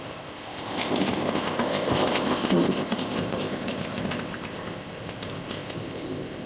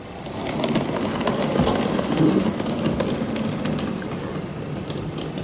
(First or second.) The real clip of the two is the second